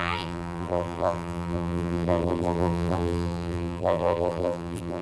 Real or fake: fake